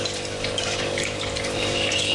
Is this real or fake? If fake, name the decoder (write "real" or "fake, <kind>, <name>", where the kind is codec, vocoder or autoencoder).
fake, codec, DAC